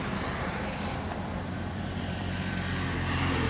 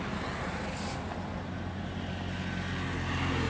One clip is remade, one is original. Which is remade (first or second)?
first